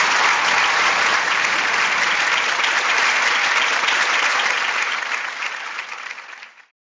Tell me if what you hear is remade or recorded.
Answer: remade